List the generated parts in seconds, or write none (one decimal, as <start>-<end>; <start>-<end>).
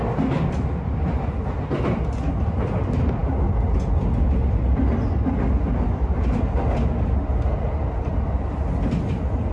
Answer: none